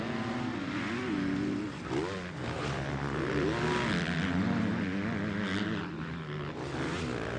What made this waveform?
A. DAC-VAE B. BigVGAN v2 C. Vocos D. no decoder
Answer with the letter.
D